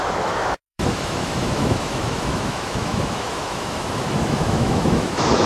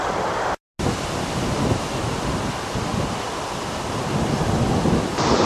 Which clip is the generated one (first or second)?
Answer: first